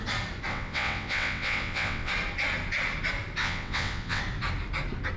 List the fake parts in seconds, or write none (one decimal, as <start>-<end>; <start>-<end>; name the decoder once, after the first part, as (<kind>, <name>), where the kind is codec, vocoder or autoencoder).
0.5-2.1 (vocoder, WaveNeXt); 3.4-4.2